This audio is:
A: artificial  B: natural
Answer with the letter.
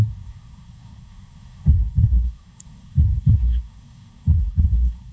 A